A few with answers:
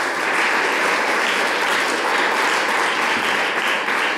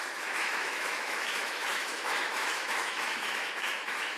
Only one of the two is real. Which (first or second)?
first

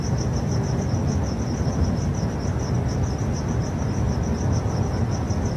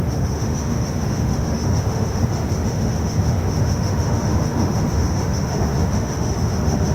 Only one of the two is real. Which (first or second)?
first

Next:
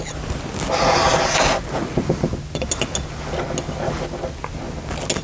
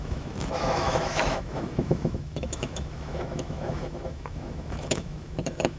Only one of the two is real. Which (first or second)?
first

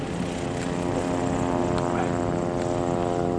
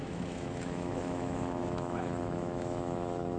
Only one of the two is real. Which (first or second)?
first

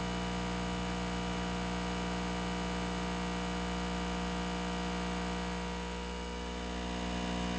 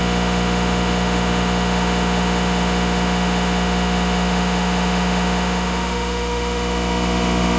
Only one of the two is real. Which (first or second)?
first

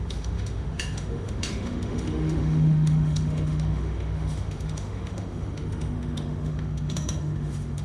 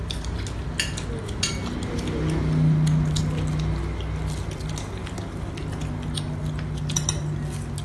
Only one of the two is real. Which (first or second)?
second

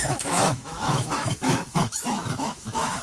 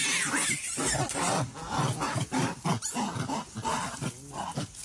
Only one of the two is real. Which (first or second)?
second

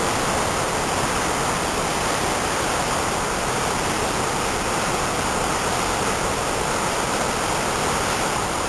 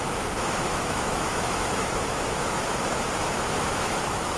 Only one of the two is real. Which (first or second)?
first